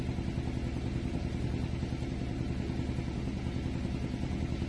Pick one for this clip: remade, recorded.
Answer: recorded